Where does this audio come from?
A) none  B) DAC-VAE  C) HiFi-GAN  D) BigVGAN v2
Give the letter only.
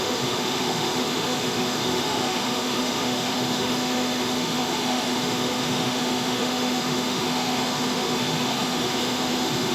B